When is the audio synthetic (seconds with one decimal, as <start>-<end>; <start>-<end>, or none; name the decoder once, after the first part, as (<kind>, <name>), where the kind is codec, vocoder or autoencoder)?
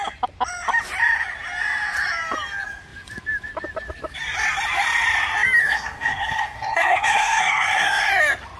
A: 5.6-8.1 (codec, SNAC)